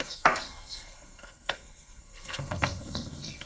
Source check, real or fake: fake